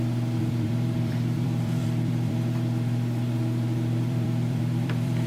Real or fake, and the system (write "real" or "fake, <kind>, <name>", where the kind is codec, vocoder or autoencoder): fake, vocoder, BigVGAN v2